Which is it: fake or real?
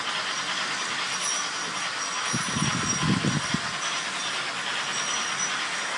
real